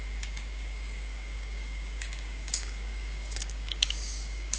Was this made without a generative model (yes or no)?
no